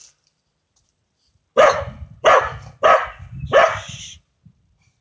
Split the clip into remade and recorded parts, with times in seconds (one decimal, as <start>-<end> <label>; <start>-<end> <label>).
0.0-5.0 recorded